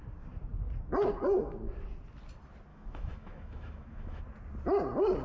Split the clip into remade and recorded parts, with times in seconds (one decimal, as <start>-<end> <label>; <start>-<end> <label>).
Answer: 0.0-2.7 recorded; 2.7-4.2 remade; 4.2-5.2 recorded